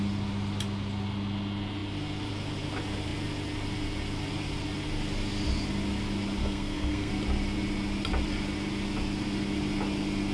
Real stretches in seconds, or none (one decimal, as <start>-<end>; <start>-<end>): 0.0-6.4; 7.1-10.3